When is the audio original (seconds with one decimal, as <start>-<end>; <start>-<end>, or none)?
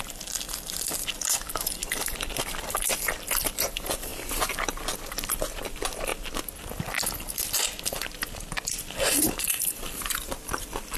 4.1-5.5; 6.1-8.4